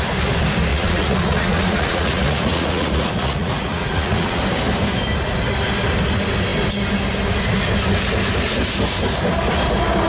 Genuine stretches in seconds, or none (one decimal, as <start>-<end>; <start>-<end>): 0.0-0.7; 4.4-10.1